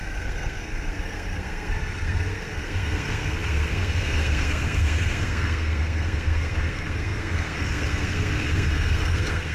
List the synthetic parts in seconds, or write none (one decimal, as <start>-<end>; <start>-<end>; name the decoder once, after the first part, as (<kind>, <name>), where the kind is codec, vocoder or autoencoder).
0.0-9.5 (codec, SNAC)